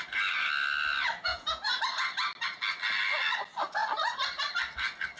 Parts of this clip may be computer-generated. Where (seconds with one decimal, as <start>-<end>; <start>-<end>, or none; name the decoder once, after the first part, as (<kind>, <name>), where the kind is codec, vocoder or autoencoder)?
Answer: 1.3-1.8 (vocoder, Vocos)